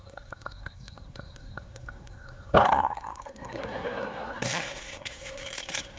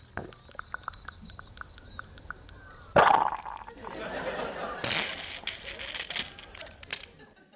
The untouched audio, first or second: second